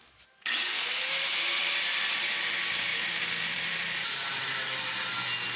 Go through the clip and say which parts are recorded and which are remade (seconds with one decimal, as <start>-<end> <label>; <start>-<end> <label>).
0.0-0.9 recorded; 0.9-1.6 remade; 1.6-2.9 recorded; 2.9-4.8 remade; 4.8-5.6 recorded